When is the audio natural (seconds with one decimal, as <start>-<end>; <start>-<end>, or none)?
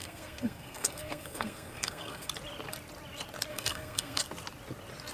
2.3-3.5; 4.2-5.1